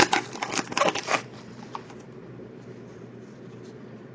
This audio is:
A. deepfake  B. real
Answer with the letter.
B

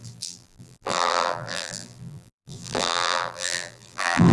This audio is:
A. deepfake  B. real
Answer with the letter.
A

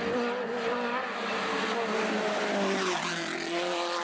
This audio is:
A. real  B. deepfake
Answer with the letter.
A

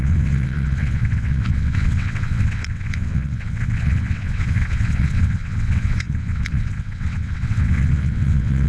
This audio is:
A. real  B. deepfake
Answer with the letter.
B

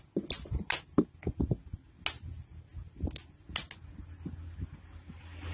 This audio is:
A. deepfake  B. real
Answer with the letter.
B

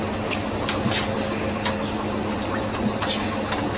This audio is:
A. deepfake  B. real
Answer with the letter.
B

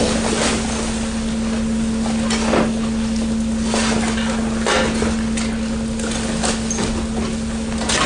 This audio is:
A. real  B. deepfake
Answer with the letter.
A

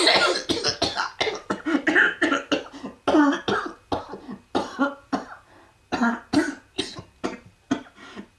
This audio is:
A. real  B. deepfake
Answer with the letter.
A